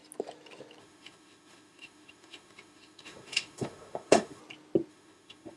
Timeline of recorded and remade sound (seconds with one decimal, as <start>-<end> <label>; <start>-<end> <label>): 0.0-0.8 recorded; 0.8-4.4 remade; 4.4-4.9 recorded; 4.9-5.6 remade